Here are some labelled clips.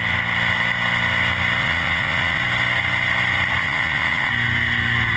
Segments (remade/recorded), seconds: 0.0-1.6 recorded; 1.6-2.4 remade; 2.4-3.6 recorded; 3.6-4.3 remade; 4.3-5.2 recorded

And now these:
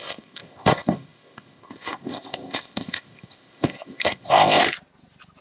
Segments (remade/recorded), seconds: 0.0-4.6 remade; 4.6-5.4 recorded

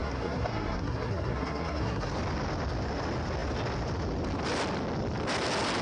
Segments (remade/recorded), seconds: 0.0-2.1 remade; 2.1-5.8 recorded

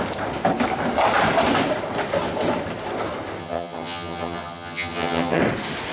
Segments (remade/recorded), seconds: 0.0-3.4 recorded; 3.4-5.4 remade; 5.4-5.9 recorded

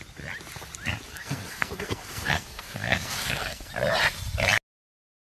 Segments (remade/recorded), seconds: 0.0-1.1 recorded; 1.1-3.7 remade; 3.7-5.2 recorded

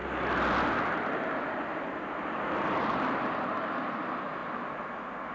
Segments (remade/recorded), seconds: 0.0-5.3 recorded

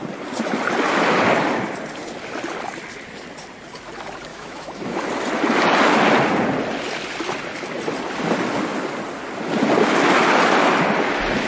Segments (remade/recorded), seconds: 0.0-4.3 recorded; 4.3-5.0 remade; 5.0-11.5 recorded

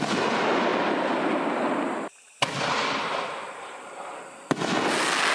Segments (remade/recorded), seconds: 0.0-5.3 recorded